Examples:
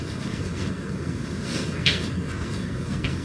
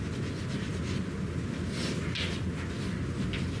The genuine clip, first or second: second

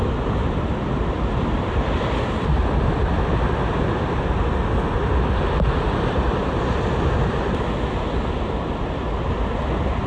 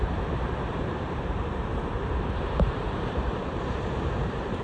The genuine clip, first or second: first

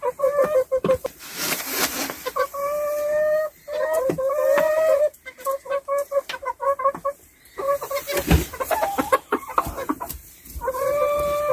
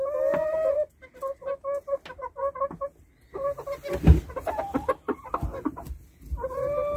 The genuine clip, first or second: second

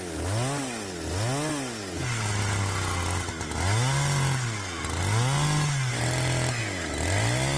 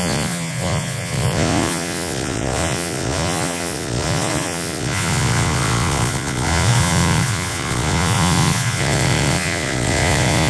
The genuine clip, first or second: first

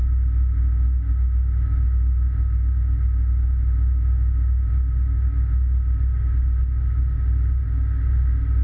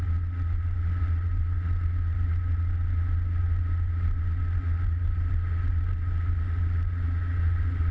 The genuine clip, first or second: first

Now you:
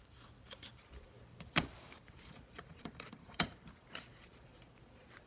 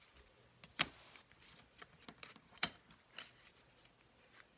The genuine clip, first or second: second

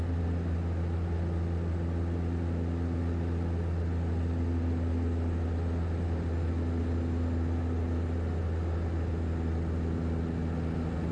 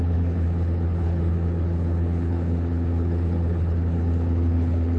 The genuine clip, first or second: first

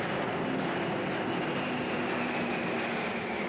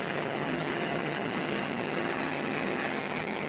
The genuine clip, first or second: first